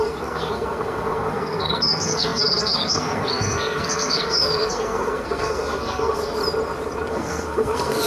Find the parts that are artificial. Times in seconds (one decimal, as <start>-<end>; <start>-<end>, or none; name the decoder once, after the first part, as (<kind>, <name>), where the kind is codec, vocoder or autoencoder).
0.0-6.4 (codec, SNAC); 7.1-8.1